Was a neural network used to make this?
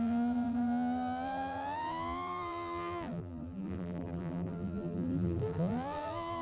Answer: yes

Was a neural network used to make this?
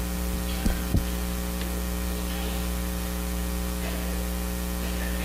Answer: no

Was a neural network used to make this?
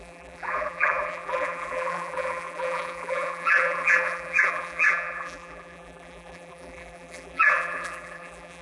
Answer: yes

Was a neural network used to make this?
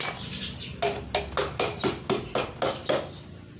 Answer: no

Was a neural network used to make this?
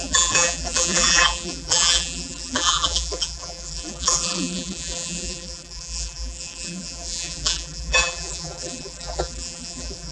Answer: yes